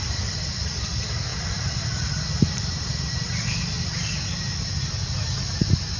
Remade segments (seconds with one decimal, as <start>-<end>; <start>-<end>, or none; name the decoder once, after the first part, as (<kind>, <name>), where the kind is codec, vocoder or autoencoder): 0.0-0.8 (vocoder, BigVGAN v2); 1.3-4.1